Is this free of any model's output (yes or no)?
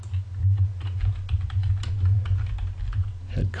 yes